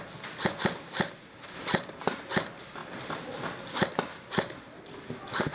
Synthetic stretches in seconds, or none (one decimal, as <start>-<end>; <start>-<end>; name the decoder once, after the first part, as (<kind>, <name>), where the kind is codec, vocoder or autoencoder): none